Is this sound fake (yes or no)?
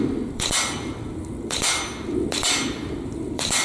yes